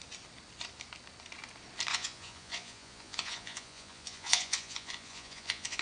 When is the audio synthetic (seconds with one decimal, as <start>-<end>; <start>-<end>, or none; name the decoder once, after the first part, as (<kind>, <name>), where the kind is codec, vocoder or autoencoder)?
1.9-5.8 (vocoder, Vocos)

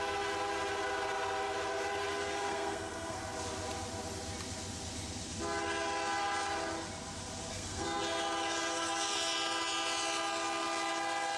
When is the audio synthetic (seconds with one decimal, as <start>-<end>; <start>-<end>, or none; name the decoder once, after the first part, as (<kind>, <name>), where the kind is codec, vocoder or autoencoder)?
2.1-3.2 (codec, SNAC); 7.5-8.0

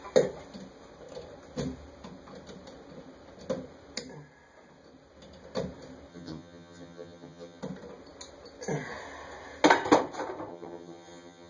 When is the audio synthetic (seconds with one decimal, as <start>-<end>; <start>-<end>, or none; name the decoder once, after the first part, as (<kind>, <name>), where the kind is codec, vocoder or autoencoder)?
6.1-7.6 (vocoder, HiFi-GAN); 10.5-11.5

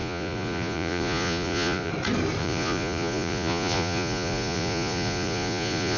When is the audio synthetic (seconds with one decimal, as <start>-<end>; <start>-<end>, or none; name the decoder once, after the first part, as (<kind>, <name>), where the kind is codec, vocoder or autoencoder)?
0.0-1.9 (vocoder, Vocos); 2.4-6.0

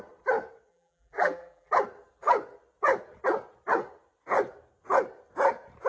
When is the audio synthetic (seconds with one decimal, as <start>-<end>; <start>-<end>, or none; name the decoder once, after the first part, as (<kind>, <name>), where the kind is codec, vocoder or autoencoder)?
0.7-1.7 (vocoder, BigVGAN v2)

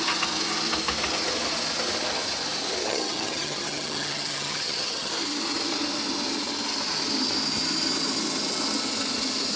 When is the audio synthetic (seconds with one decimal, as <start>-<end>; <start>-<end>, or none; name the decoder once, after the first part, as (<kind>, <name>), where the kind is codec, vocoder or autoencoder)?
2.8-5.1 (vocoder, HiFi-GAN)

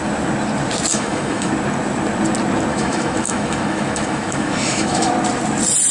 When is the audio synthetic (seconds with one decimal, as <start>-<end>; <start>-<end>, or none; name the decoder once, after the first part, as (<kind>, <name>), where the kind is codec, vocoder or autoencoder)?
0.9-1.5 (autoencoder, DAC-VAE); 2.7-5.1

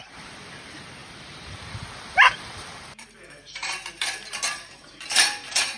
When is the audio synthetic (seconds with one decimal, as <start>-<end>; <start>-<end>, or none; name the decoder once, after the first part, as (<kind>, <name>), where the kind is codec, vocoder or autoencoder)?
0.0-5.8 (vocoder, BigVGAN v2)